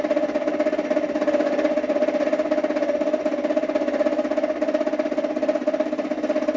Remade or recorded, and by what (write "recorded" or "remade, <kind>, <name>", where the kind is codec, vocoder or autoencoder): recorded